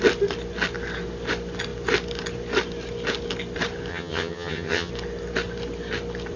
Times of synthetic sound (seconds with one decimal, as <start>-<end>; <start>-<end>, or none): 3.9-4.9